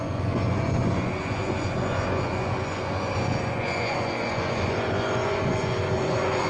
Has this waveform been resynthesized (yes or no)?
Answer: yes